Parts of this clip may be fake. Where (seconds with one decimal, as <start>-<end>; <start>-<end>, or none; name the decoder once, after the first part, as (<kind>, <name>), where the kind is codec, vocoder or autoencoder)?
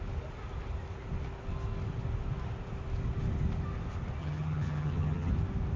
4.2-5.3 (vocoder, HiFi-GAN)